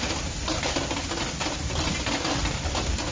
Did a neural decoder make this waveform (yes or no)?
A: no